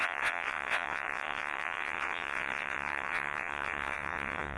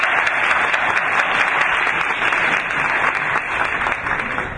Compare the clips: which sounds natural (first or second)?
second